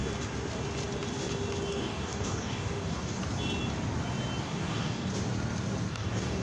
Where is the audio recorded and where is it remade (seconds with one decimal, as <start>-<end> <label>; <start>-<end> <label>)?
0.0-1.7 recorded; 1.7-3.2 remade; 3.2-4.4 recorded; 4.4-5.1 remade; 5.1-5.9 recorded; 5.9-6.4 remade